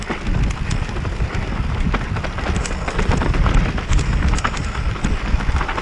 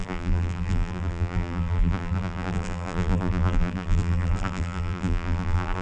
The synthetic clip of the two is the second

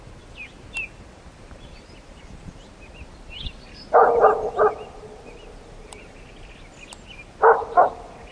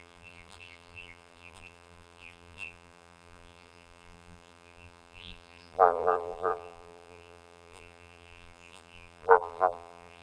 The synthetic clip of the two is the second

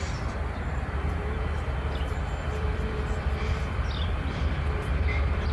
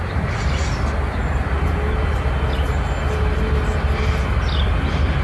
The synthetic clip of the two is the first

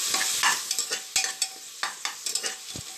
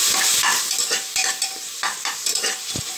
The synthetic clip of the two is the second